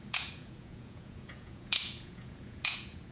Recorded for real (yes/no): no